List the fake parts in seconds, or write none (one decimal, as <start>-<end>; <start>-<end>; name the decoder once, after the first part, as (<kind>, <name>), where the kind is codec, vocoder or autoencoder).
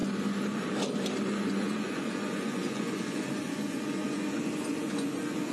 1.4-5.5 (vocoder, Vocos)